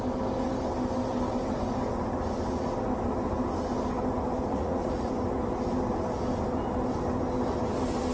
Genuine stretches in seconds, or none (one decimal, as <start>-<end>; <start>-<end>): 0.0-4.5; 5.1-8.1